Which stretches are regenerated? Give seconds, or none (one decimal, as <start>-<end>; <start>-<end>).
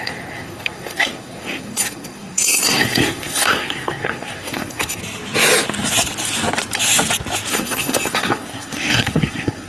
0.0-5.0; 7.5-9.7